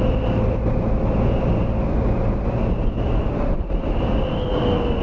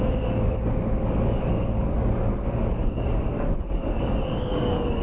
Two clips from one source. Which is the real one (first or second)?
first